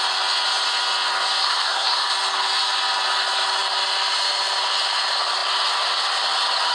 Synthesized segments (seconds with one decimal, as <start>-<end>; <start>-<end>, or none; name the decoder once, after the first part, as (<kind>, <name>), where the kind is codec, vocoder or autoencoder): 1.4-2.1 (codec, SNAC)